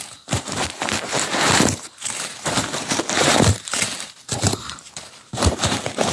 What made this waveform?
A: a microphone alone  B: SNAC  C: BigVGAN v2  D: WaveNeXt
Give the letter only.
C